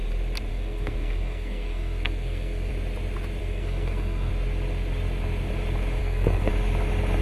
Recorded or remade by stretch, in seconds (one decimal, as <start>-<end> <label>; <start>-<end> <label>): 0.0-0.5 recorded; 0.5-2.7 remade; 2.7-3.4 recorded; 3.4-4.3 remade; 4.3-6.0 recorded; 6.0-6.5 remade; 6.5-7.2 recorded